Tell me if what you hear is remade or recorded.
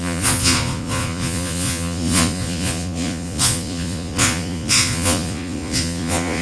remade